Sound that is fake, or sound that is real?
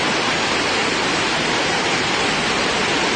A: real